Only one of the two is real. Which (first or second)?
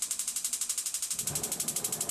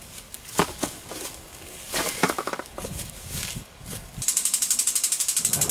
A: first